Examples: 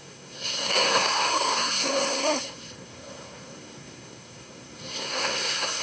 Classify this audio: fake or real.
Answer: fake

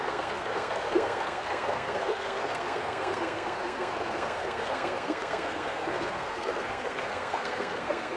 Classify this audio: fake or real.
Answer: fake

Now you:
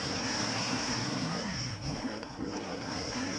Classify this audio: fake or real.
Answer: fake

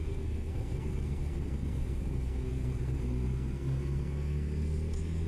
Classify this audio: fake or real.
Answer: fake